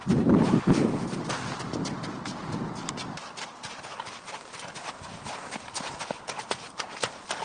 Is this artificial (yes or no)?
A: no